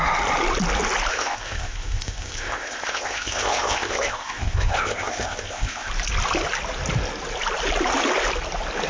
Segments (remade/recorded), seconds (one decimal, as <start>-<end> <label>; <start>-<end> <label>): 0.0-1.1 recorded; 1.1-5.9 remade; 5.9-8.9 recorded